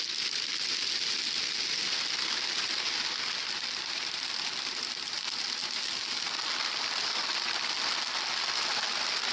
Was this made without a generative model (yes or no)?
yes